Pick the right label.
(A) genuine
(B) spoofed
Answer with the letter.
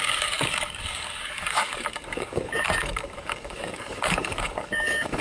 B